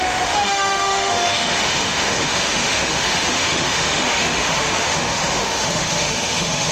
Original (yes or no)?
no